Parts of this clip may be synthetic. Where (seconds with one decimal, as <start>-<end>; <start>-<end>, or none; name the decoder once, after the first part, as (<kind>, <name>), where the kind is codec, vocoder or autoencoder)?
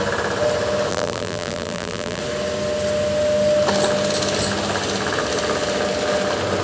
0.9-2.2 (vocoder, BigVGAN v2)